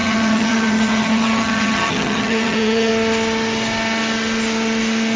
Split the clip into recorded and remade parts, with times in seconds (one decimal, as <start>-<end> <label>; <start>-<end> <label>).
0.0-2.9 remade; 2.9-5.2 recorded